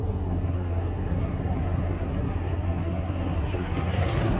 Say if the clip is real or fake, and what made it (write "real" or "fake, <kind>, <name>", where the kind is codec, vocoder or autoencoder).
fake, codec, SNAC